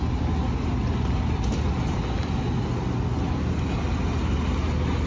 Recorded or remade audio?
recorded